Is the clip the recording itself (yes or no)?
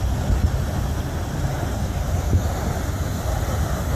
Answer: yes